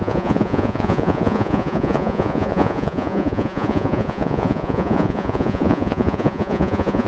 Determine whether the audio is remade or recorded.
remade